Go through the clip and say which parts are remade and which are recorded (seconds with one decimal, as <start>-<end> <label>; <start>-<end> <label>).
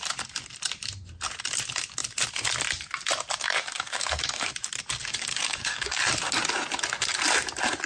0.0-3.5 recorded; 3.5-4.5 remade; 4.5-5.1 recorded; 5.1-6.0 remade; 6.0-7.9 recorded